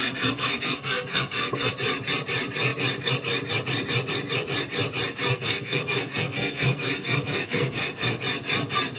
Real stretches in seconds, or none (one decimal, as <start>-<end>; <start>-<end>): 1.7-5.3; 8.2-9.0